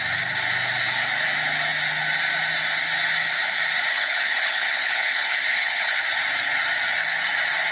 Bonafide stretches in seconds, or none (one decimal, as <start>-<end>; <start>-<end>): 0.0-3.9; 6.0-7.7